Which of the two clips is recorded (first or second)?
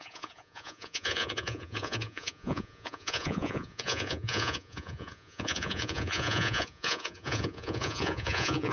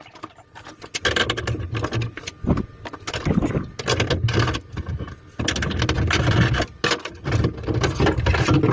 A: second